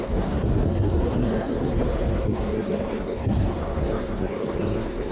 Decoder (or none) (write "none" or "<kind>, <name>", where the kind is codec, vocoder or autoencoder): codec, SNAC